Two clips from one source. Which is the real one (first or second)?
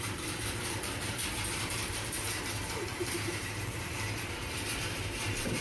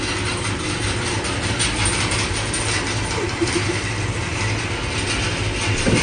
second